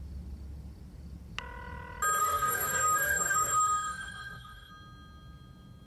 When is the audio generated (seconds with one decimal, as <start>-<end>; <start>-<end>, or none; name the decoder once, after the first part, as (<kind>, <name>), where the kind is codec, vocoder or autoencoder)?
2.2-4.7 (codec, DAC)